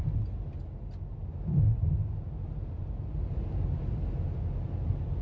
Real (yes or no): yes